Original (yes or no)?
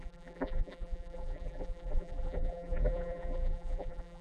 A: no